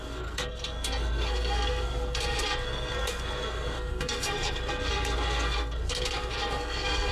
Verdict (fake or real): fake